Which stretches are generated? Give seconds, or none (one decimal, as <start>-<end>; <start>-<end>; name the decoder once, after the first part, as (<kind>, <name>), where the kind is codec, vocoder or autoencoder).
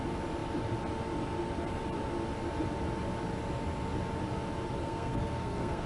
4.8-5.9 (codec, SNAC)